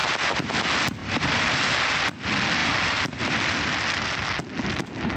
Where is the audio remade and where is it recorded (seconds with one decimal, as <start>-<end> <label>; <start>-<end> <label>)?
0.0-0.5 remade; 0.5-1.0 recorded; 1.0-1.7 remade; 1.7-2.6 recorded; 2.6-4.4 remade; 4.4-5.2 recorded

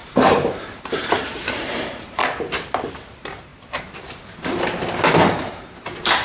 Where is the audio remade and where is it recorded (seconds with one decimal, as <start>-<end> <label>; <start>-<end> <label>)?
0.0-2.2 remade; 2.2-2.9 recorded; 2.9-3.5 remade; 3.5-5.3 recorded; 5.3-6.2 remade

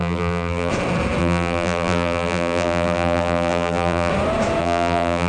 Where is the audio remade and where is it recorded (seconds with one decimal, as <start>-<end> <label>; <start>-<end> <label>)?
0.0-0.7 remade; 0.7-1.2 recorded; 1.2-4.1 remade; 4.1-4.6 recorded; 4.6-5.3 remade

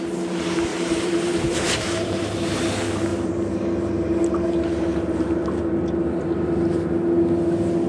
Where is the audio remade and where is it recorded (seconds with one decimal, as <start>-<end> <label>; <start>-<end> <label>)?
0.0-0.7 recorded; 0.7-2.6 remade; 2.6-7.9 recorded